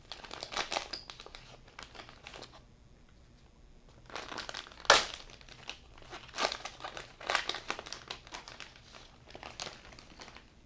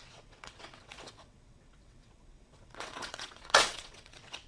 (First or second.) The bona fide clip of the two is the first